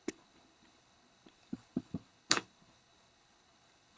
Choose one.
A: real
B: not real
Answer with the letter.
B